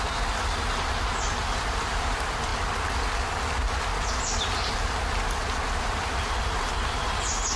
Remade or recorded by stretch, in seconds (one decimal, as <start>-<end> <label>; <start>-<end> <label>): 0.0-7.6 recorded